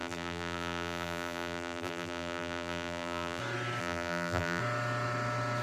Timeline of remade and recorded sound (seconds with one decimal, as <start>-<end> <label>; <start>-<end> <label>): 0.0-3.4 remade; 3.4-3.8 recorded; 3.8-4.6 remade; 4.6-5.6 recorded